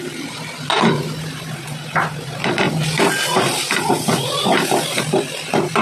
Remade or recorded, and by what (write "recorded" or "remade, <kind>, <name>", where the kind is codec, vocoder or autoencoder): recorded